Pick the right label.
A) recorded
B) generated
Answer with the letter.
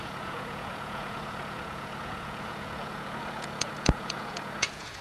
B